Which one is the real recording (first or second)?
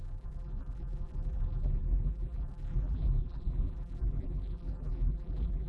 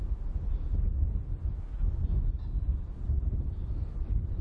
second